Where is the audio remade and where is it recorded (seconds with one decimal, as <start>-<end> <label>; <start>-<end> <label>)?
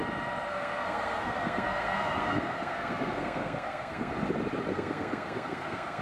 0.0-0.5 recorded; 0.5-4.1 remade; 4.1-4.7 recorded; 4.7-6.0 remade